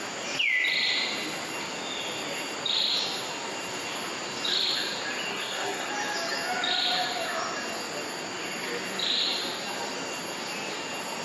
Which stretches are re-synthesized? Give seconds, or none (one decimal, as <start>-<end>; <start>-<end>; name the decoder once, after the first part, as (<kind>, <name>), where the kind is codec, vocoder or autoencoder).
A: 5.3-5.9 (codec, SNAC)